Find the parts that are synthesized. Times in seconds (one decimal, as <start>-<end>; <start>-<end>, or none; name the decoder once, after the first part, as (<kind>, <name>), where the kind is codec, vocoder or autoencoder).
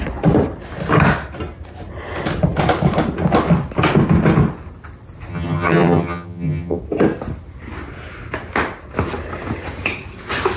5.3-6.8 (vocoder, HiFi-GAN)